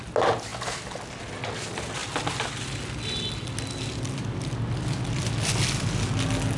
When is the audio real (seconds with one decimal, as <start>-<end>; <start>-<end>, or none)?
0.0-6.6